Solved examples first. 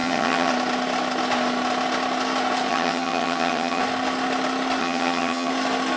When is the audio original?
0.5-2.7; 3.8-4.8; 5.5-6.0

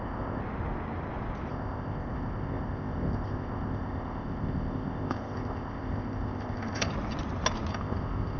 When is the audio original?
0.4-1.5; 6.9-7.7

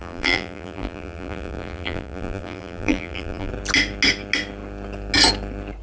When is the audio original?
3.5-5.8

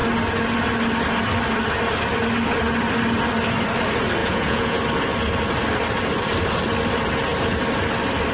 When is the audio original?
0.0-4.2; 4.8-8.3

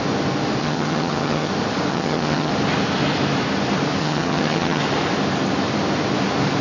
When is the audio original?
0.0-0.6; 1.5-1.9; 2.5-4.0; 4.8-6.6

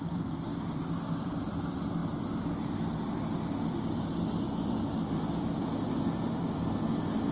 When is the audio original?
0.0-7.3

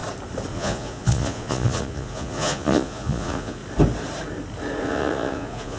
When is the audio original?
0.0-0.5; 3.6-4.8

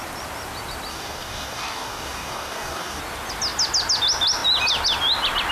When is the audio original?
0.0-0.9; 3.0-5.5